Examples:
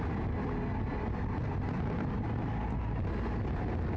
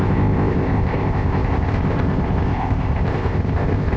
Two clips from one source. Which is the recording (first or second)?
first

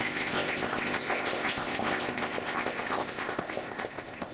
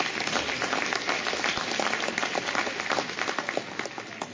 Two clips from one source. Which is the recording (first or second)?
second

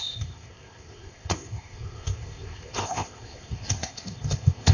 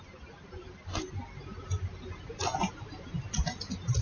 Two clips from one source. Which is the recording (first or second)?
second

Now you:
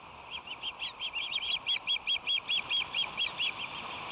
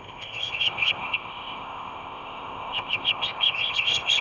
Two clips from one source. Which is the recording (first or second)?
first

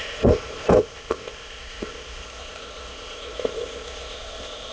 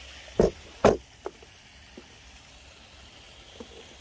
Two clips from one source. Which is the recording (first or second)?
second